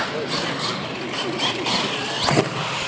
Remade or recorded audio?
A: recorded